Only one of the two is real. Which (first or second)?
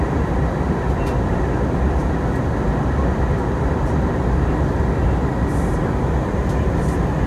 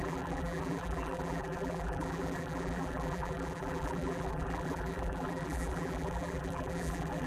first